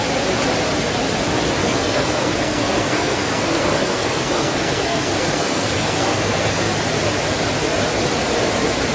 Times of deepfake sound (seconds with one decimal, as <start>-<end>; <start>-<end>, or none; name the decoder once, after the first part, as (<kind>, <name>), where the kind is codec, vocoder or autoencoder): 1.6-6.6 (codec, SNAC)